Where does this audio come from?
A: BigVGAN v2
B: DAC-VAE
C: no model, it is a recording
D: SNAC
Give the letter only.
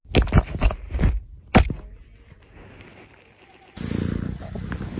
C